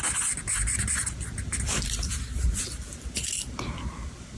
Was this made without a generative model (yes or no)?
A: yes